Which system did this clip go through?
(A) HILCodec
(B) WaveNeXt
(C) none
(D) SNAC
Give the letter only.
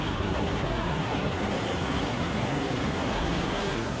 D